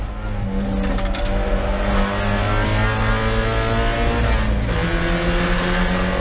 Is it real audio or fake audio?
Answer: real